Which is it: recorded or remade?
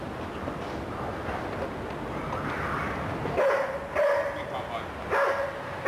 recorded